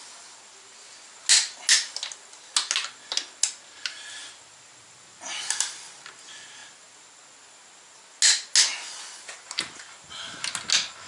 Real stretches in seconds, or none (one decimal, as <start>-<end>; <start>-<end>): 0.0-11.1

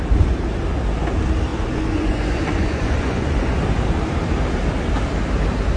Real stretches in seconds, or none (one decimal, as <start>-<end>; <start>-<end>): 0.0-1.5; 3.6-5.8